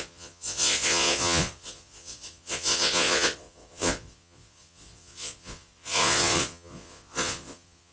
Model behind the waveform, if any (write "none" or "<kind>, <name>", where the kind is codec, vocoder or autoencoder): vocoder, Vocos